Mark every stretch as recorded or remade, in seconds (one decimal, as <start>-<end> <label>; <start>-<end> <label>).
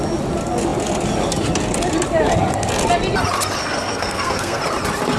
0.0-3.6 recorded; 3.6-4.6 remade; 4.6-5.2 recorded